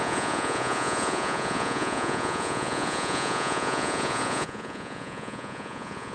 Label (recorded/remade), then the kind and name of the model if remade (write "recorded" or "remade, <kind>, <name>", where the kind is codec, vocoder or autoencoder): remade, vocoder, Vocos